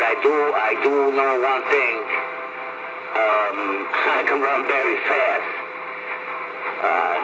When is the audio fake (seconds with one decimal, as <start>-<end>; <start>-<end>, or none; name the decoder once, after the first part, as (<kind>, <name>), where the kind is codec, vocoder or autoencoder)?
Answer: 4.8-5.6 (vocoder, Vocos); 6.4-7.2